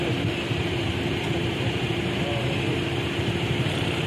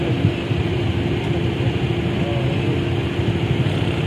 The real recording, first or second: second